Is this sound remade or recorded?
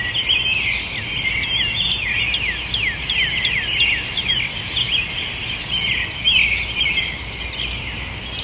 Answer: recorded